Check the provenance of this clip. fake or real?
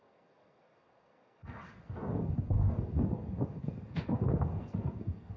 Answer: fake